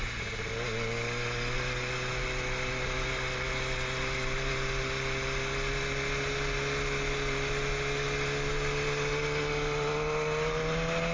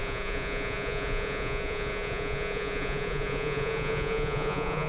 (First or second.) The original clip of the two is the first